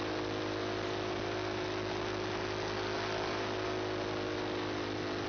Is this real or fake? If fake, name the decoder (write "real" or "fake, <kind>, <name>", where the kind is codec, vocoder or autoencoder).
real